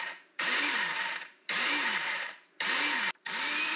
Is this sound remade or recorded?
remade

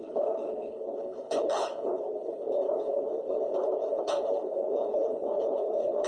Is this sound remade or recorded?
remade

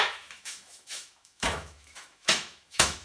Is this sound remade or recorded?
remade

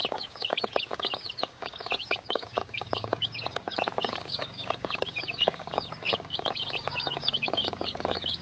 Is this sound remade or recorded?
remade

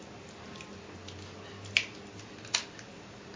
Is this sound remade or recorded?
recorded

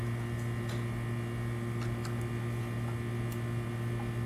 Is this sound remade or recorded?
recorded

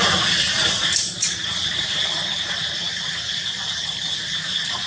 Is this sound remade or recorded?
remade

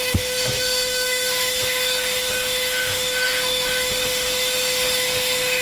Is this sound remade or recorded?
remade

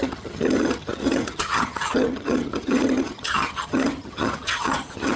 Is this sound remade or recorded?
remade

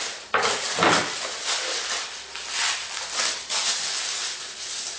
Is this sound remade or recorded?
recorded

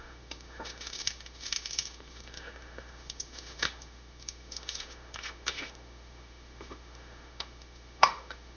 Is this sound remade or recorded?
remade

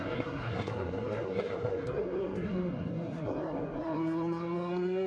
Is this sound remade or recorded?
remade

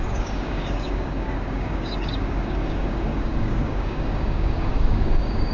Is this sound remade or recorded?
remade